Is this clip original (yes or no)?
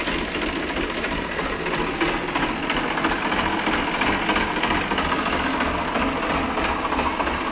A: yes